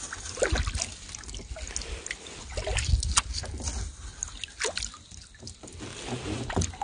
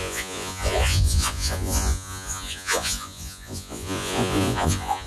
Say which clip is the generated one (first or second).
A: second